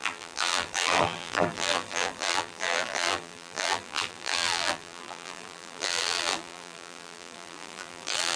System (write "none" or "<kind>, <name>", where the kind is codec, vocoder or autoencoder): vocoder, BigVGAN v2